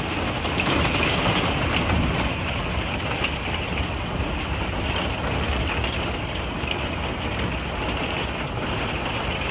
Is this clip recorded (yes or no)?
yes